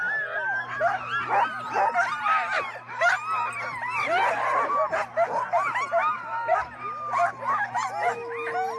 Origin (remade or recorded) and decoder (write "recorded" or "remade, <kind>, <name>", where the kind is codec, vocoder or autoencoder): recorded